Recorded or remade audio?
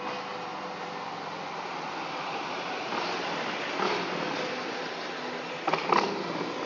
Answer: recorded